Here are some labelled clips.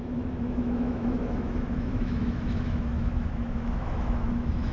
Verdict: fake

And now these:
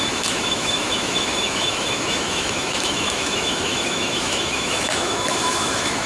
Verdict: fake